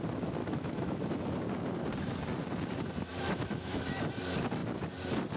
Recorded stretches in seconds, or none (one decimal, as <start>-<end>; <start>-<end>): 0.0-0.4; 1.0-3.1; 4.0-5.4